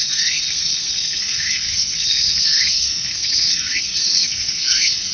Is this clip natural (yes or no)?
no